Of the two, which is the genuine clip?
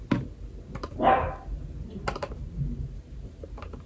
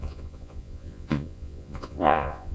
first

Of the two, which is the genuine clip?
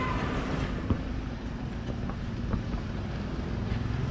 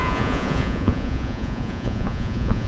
first